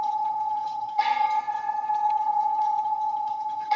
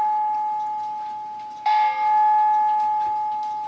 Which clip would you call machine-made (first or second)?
first